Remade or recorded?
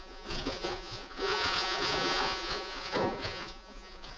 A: remade